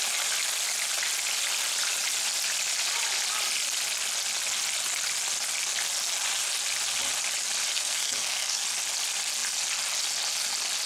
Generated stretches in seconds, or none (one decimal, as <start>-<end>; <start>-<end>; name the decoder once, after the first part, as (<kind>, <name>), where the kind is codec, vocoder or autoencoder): 7.7-8.6 (codec, SNAC)